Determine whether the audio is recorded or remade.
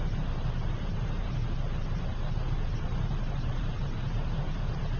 remade